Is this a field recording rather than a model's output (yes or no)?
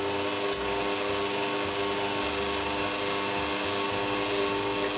yes